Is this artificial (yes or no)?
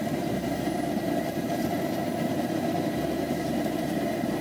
yes